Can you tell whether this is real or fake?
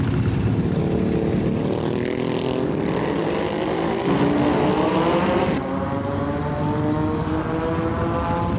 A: real